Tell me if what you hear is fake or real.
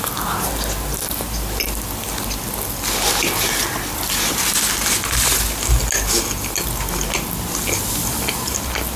real